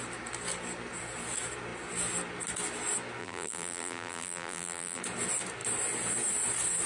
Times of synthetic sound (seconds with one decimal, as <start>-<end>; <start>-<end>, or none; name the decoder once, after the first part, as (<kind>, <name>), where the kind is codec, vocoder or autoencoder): 3.2-5.0 (vocoder, BigVGAN v2)